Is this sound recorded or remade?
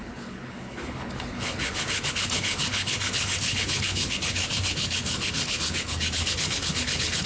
remade